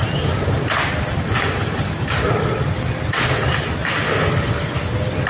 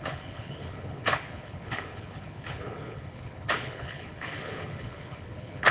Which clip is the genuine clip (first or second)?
first